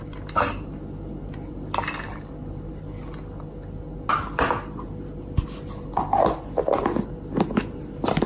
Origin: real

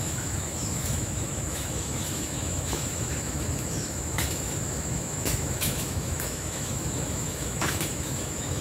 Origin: fake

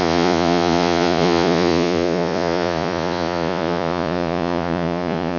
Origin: fake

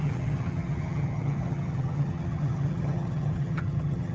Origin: fake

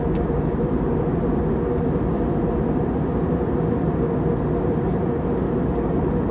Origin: real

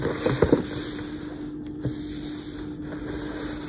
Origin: real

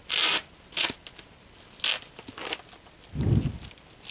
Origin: real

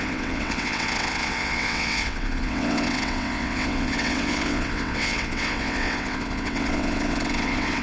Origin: fake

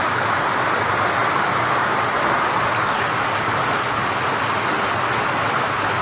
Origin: real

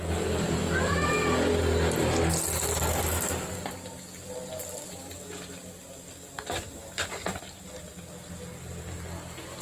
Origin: real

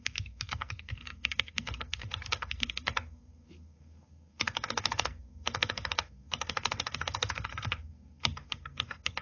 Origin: fake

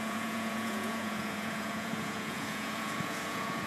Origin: fake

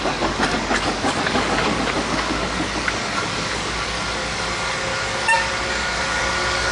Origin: fake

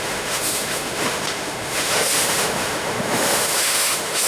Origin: fake